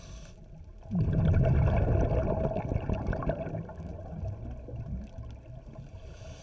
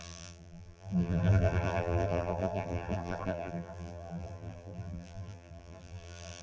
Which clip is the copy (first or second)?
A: second